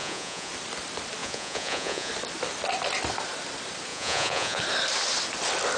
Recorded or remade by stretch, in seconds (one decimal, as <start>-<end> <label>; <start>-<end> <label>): 0.0-0.5 remade; 0.5-1.2 recorded; 1.2-2.1 remade; 2.1-3.9 recorded; 3.9-4.6 remade; 4.6-5.8 recorded